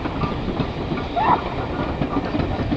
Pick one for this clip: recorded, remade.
remade